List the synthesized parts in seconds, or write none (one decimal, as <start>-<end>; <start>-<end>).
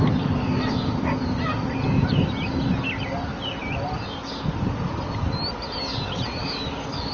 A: 6.4-7.1